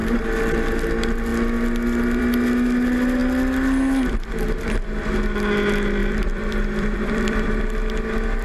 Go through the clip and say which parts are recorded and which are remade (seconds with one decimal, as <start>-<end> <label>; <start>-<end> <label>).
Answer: 0.0-6.0 recorded; 6.0-7.6 remade; 7.6-8.4 recorded